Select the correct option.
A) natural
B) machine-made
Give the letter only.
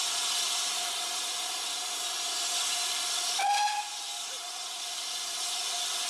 A